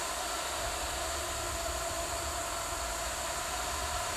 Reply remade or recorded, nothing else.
recorded